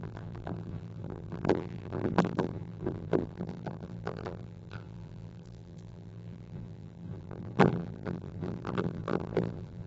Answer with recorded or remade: remade